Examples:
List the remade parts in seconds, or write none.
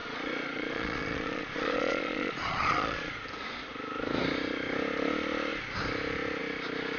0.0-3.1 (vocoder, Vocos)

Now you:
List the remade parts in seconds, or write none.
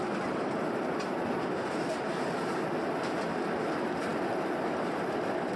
none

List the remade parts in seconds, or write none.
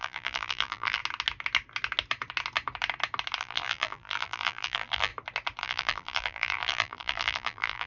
0.0-1.0 (vocoder, BigVGAN v2); 3.4-5.1; 5.6-7.9